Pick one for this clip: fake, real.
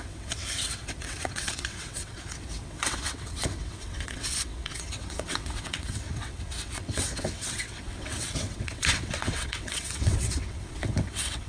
fake